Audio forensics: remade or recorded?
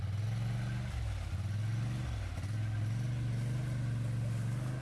recorded